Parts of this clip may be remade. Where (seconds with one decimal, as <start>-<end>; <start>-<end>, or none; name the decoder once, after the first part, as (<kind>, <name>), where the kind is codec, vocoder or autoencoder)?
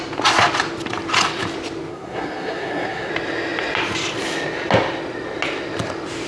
1.9-3.1 (codec, SNAC)